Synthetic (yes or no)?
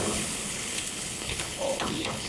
yes